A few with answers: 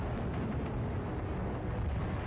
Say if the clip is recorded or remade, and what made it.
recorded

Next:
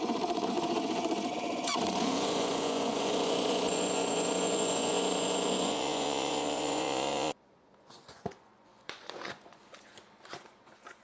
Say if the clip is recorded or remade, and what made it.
remade, vocoder, Vocos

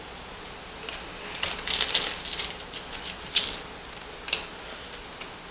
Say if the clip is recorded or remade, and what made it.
recorded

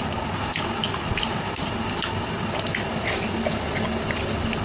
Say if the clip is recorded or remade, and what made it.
recorded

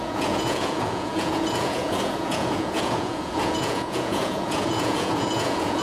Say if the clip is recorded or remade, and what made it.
remade, vocoder, Vocos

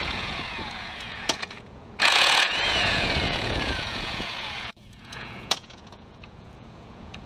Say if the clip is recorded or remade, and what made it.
remade, vocoder, Vocos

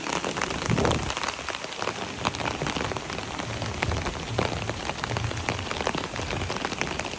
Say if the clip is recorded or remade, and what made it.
recorded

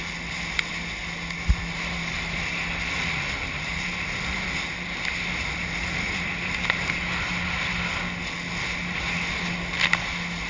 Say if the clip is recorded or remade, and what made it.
recorded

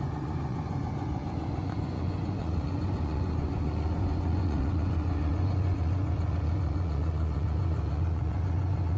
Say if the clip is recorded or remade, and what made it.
remade, vocoder, Vocos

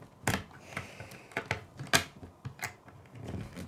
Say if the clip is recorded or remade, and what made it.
recorded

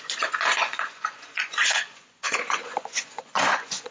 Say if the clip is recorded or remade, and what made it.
remade, vocoder, Vocos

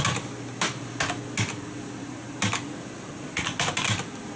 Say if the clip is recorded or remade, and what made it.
recorded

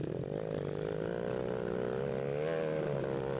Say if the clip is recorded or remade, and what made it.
recorded